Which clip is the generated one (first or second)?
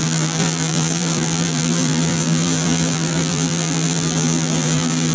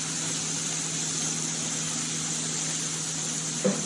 first